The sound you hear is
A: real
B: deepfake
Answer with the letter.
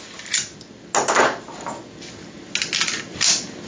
A